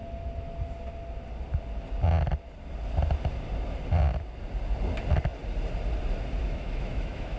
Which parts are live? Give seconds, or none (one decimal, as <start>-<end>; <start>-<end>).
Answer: 0.0-6.4